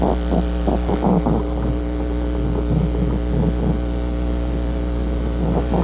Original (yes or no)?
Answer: yes